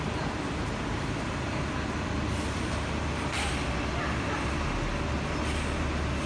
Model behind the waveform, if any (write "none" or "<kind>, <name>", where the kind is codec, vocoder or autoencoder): none